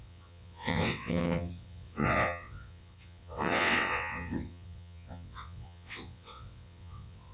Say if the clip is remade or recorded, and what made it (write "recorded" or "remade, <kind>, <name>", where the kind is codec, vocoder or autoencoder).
remade, vocoder, WaveNeXt